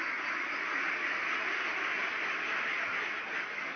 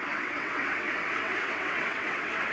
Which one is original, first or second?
first